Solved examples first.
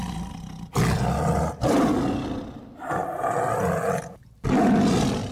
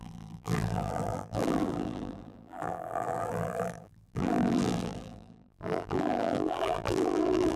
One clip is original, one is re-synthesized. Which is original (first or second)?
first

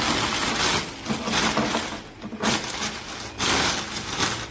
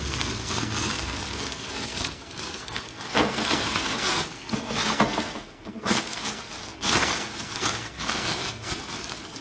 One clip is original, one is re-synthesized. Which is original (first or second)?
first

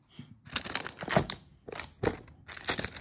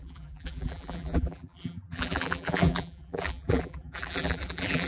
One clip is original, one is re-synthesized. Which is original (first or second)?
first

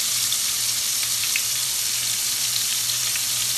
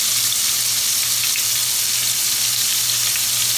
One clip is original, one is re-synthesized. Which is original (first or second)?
second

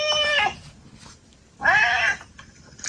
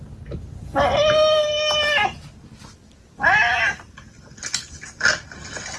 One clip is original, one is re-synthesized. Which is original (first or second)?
second